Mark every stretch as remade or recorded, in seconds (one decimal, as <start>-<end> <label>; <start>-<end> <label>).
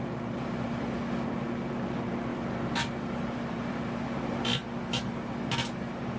0.0-2.3 recorded; 2.3-3.7 remade; 3.7-6.2 recorded